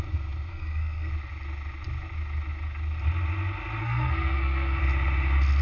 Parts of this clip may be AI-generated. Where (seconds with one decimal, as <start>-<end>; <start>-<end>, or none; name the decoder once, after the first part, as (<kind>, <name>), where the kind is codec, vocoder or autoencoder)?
0.5-1.1 (codec, SNAC); 3.8-4.8